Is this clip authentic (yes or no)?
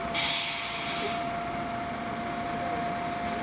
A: yes